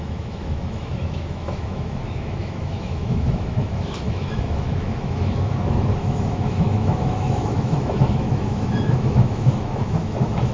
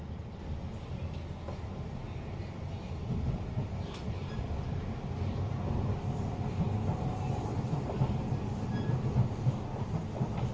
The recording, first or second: second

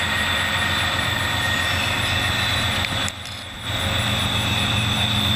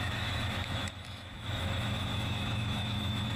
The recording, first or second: first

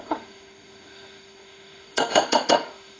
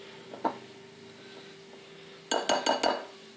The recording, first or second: second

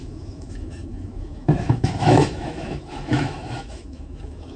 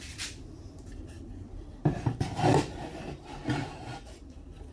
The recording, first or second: second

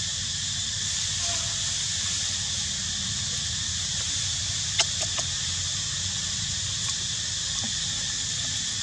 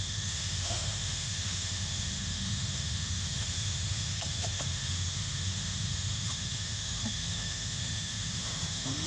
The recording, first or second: first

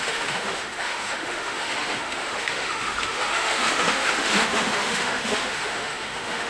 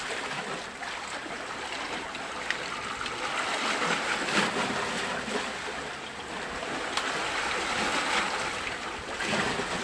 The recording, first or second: second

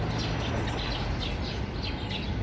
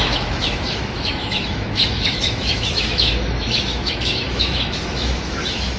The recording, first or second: first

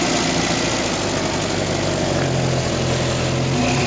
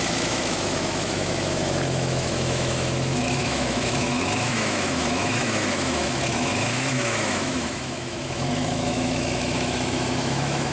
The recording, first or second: first